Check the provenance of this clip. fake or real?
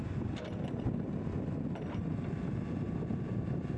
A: real